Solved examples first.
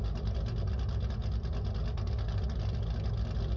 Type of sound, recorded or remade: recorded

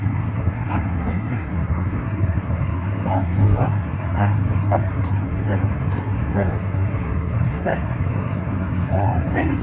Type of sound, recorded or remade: remade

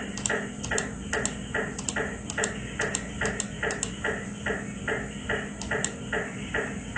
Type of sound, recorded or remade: recorded